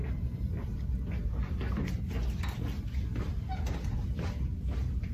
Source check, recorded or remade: recorded